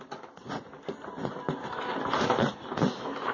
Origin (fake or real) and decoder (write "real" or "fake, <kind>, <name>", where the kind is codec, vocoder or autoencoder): real